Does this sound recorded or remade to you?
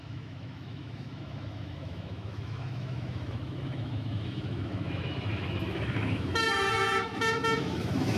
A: remade